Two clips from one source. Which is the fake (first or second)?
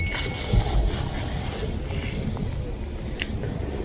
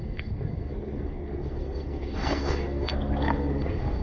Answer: second